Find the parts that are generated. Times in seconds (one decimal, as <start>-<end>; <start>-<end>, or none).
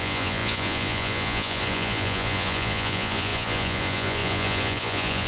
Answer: 0.0-5.3